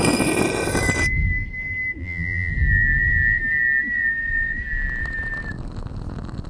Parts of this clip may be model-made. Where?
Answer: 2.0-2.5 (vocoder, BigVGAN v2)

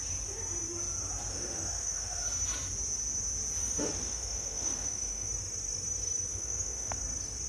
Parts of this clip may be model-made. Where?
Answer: 1.3-2.2 (autoencoder, DAC-VAE); 3.6-5.3; 6.3-6.9

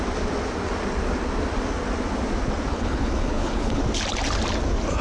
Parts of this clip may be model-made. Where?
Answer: 2.7-3.8 (codec, HILCodec)

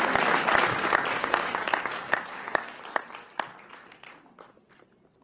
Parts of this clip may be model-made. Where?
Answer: 1.2-2.8 (codec, DAC)